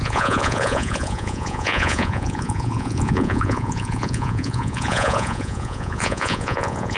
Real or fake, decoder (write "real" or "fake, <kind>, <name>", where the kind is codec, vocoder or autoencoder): fake, vocoder, Vocos